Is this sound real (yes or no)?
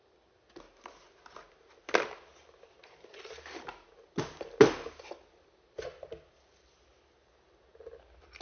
yes